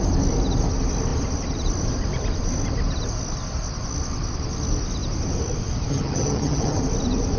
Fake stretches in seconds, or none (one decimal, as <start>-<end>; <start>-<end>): 5.9-6.8